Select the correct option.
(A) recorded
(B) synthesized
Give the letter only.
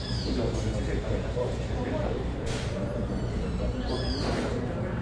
B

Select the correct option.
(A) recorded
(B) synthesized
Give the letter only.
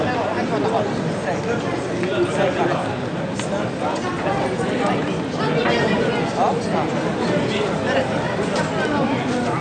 A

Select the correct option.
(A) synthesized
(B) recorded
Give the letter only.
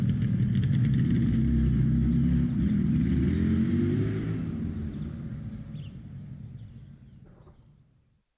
A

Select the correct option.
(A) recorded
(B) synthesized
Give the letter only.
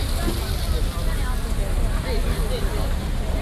B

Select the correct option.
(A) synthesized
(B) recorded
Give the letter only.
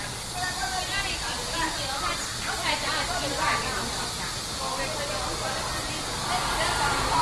B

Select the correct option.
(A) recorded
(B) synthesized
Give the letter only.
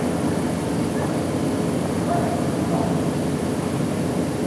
A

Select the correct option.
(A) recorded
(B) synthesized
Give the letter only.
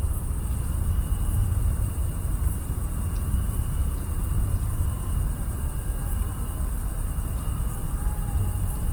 B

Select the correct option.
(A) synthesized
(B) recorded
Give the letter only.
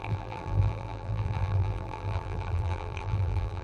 A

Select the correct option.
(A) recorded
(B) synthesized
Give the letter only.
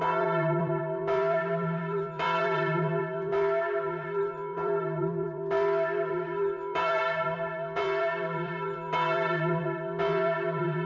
B